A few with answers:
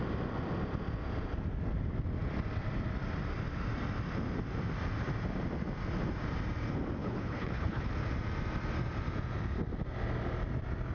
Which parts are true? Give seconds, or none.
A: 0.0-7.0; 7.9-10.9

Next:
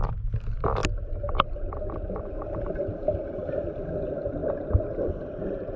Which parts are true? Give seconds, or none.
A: 0.0-5.8

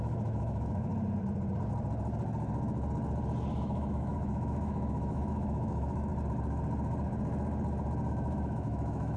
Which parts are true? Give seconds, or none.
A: 0.9-3.5; 6.1-8.1